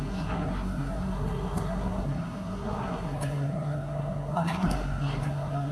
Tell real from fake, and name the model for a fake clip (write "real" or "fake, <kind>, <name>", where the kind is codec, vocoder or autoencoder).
fake, codec, SNAC